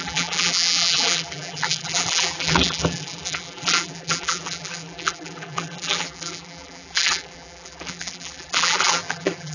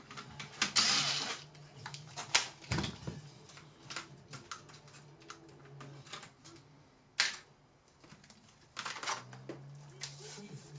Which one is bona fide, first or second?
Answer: second